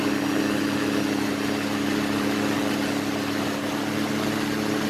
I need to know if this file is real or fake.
real